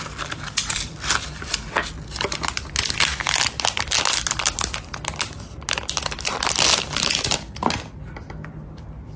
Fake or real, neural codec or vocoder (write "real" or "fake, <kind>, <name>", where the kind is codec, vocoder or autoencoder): real